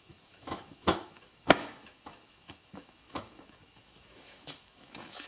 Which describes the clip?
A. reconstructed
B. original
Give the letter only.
A